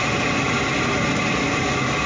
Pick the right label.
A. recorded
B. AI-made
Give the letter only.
A